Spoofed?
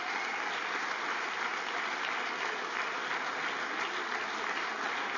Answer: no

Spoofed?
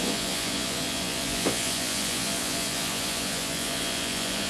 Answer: yes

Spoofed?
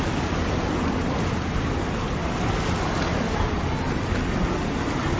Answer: no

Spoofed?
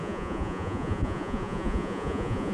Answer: yes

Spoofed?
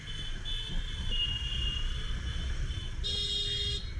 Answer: no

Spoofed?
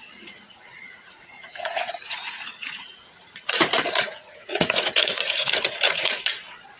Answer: yes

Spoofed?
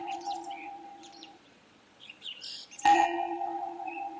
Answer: yes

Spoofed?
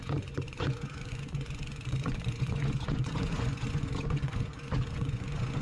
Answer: yes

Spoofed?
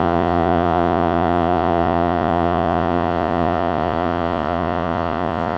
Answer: yes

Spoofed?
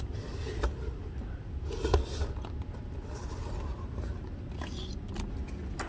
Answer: no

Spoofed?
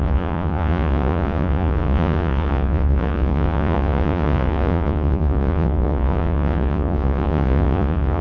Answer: yes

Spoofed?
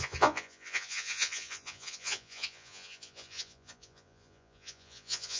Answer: yes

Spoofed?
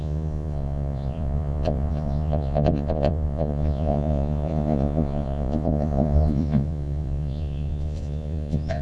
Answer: yes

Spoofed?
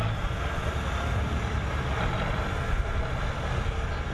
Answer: no